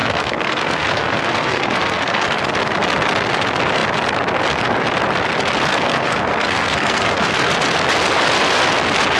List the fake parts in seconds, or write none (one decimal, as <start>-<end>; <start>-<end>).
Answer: 0.0-2.4; 5.7-7.5